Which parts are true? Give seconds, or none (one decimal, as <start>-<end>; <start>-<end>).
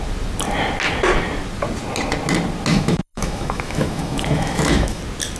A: 0.0-2.7; 5.0-5.4